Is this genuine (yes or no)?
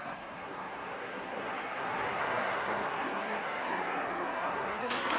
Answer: no